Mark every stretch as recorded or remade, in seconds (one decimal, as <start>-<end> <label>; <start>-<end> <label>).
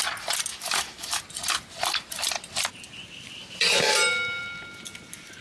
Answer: 0.0-0.5 recorded; 0.5-1.2 remade; 1.2-5.4 recorded